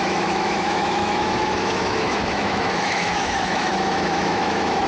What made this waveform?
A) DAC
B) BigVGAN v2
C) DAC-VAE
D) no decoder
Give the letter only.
C